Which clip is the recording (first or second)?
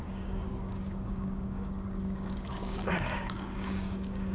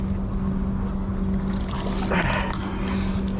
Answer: second